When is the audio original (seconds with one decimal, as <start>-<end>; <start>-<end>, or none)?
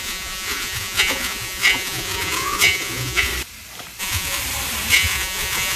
3.3-4.0; 4.4-4.9